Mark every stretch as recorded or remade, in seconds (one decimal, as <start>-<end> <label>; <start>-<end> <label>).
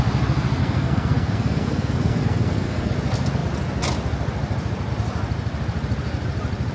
0.0-0.6 recorded; 0.6-2.9 remade; 2.9-6.7 recorded